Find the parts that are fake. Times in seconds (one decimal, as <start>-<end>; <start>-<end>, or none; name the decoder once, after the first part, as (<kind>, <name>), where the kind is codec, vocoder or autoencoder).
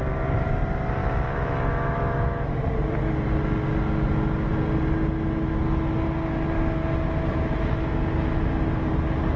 1.0-2.5 (autoencoder, DAC-VAE)